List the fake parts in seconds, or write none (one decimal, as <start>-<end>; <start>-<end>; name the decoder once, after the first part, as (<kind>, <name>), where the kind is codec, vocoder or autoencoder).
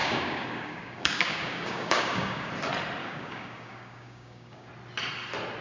0.0-2.5 (codec, DAC); 3.0-4.7